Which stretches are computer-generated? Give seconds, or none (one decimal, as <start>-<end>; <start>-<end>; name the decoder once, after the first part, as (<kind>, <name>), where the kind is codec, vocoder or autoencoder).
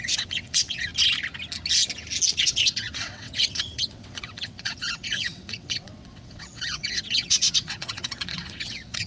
0.0-0.9 (vocoder, WaveNeXt); 2.4-9.1